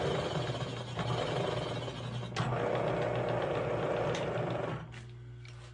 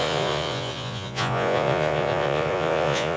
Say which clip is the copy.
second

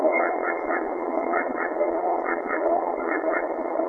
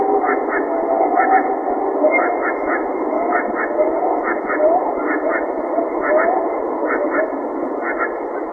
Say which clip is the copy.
first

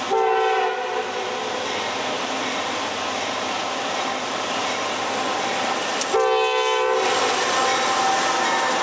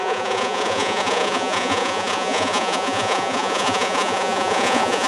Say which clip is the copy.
second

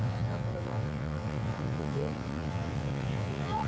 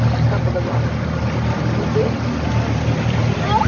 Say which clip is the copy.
first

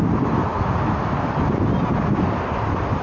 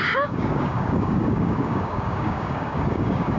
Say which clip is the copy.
second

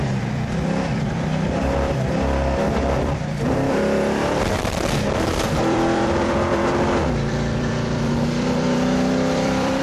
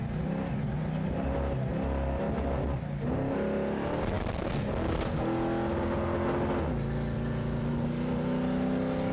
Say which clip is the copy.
first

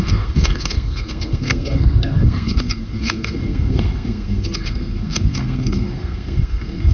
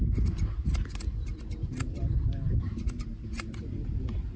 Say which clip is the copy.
first